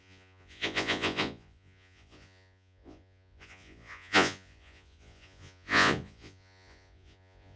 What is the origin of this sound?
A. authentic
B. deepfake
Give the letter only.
B